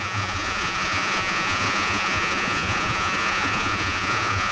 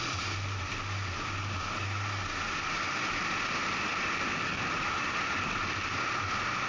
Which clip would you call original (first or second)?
second